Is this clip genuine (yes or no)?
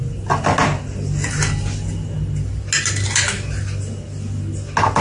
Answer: yes